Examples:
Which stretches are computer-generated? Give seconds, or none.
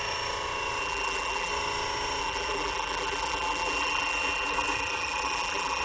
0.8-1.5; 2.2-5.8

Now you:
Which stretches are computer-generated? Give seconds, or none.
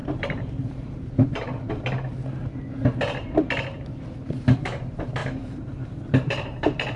0.0-2.4; 4.2-7.0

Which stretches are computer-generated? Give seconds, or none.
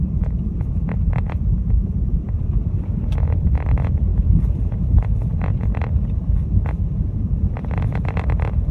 0.0-8.7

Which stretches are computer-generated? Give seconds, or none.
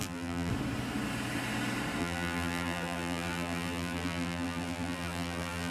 0.0-0.5; 2.0-5.7